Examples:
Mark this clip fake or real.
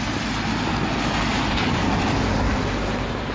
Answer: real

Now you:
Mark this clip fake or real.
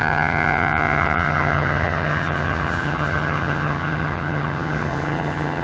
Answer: fake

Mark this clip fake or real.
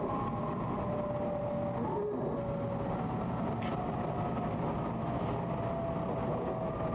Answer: real